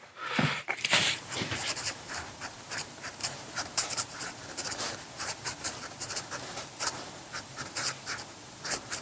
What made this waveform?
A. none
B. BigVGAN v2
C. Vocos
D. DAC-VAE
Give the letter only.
B